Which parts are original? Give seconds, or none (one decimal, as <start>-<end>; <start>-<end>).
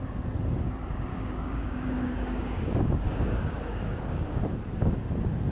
0.0-1.1; 4.4-5.5